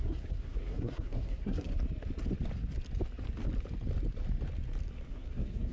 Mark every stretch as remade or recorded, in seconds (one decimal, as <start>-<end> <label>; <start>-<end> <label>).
0.0-1.7 remade; 1.7-5.1 recorded; 5.1-5.7 remade

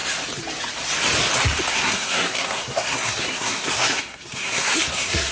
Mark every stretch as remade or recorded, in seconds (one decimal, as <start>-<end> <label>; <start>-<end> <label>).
0.0-1.7 recorded; 1.7-5.3 remade